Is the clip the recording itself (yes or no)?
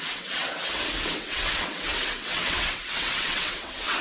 no